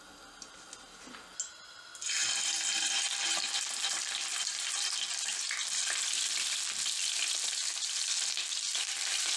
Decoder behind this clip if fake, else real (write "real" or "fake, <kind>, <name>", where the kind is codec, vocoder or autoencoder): real